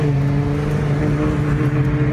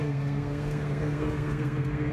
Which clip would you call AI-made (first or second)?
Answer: second